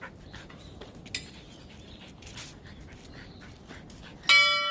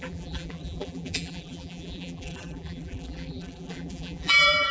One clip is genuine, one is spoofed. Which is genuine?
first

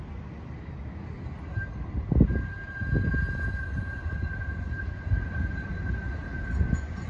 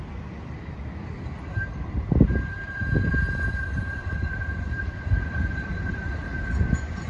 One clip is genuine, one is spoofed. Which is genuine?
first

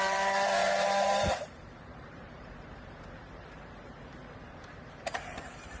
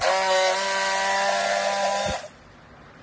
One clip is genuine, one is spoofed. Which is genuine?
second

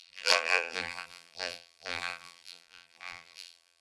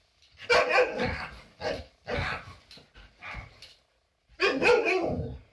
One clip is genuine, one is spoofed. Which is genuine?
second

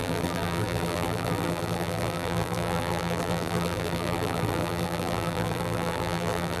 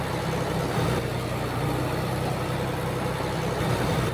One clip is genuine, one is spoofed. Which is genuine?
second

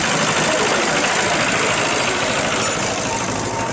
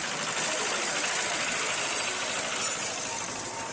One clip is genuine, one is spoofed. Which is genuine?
second